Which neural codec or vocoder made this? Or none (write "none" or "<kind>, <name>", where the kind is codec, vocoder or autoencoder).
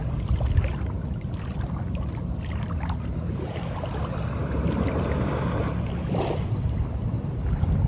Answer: none